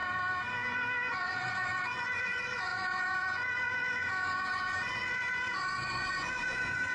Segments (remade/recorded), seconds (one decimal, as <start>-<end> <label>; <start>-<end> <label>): 0.0-1.1 recorded; 1.1-6.9 remade